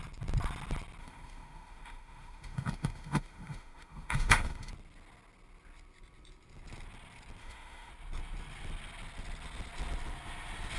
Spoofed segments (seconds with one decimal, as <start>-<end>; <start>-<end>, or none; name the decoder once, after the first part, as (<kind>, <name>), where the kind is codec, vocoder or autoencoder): 1.0-4.7 (autoencoder, DAC-VAE); 7.4-7.9